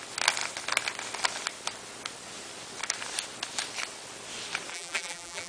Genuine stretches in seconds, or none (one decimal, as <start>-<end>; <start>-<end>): 0.0-4.7